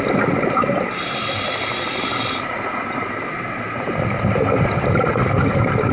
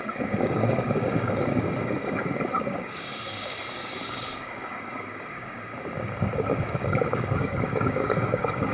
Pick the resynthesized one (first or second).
second